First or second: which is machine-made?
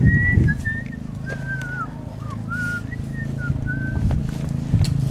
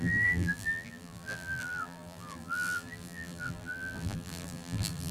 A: second